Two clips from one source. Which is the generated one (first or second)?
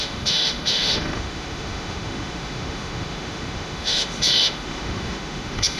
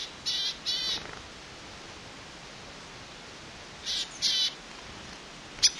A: first